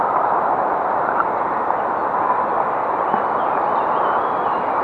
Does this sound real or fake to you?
real